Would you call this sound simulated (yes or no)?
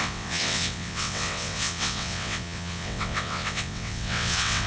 yes